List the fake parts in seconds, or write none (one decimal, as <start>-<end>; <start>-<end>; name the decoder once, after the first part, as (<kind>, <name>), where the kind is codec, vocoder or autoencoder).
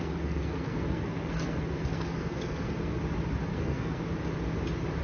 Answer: 0.0-3.0 (codec, SNAC); 3.5-4.0